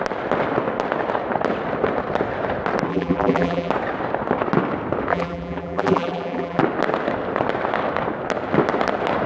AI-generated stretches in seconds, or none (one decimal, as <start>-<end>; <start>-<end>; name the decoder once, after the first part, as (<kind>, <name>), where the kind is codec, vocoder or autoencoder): 2.9-3.7 (vocoder, BigVGAN v2); 5.1-6.6